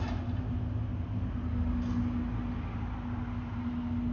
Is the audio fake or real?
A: real